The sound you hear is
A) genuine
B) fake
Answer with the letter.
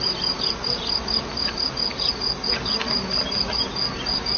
A